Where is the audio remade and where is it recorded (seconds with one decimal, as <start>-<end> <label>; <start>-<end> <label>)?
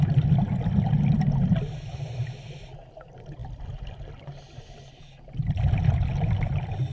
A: 0.0-6.9 recorded